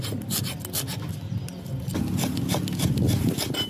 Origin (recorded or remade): recorded